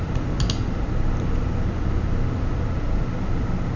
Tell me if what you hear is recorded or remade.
recorded